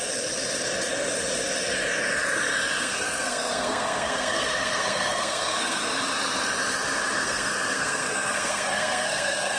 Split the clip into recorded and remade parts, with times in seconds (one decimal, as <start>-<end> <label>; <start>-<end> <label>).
0.0-2.8 recorded; 2.8-5.8 remade; 5.8-7.2 recorded; 7.2-9.6 remade